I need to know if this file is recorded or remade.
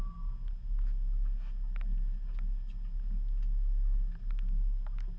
recorded